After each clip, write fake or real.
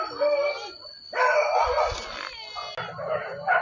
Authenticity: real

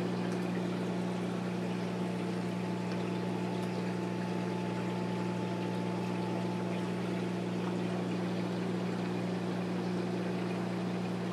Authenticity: real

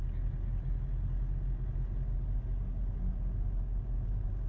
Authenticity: real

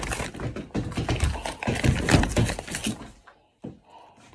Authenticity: real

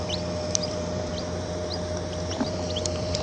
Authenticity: fake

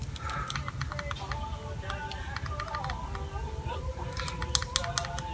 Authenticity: real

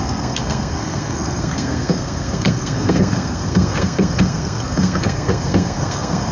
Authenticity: fake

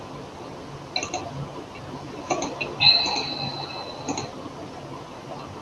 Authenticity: real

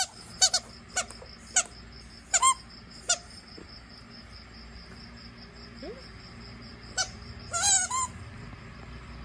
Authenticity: real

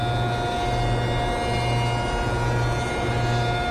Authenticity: real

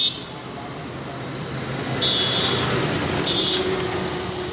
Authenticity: real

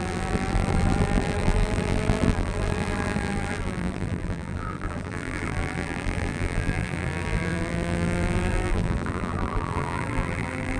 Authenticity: fake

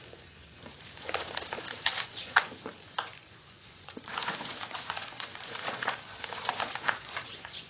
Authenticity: fake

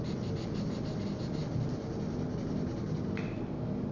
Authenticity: real